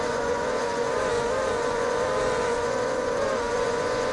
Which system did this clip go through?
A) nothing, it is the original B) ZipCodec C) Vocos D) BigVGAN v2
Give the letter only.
C